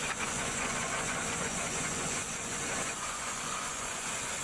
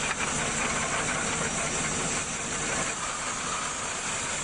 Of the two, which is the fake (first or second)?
first